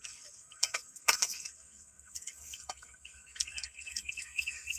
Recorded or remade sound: remade